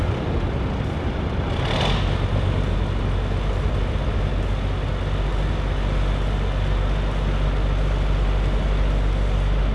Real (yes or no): yes